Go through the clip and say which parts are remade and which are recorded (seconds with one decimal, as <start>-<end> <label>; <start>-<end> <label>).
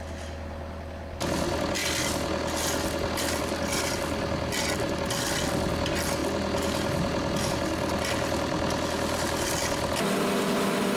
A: 0.0-11.0 recorded